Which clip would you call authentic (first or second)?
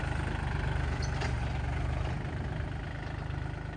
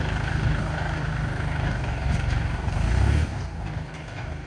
first